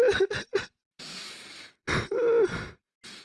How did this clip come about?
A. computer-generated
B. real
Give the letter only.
B